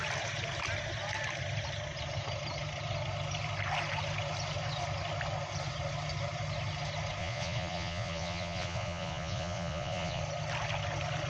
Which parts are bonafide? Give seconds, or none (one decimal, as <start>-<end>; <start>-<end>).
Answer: 0.0-7.2; 10.2-11.3